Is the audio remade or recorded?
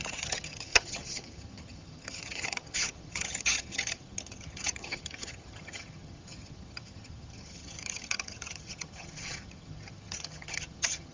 remade